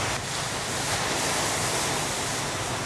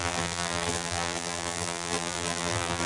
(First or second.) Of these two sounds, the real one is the first